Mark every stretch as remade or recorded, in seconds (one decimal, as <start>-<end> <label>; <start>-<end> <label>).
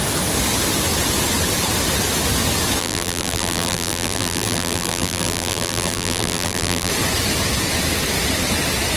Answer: 0.0-2.8 recorded; 2.8-6.9 remade; 6.9-9.0 recorded